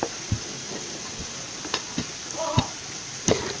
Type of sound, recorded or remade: recorded